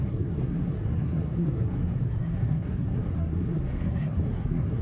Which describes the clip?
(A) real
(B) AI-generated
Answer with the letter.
B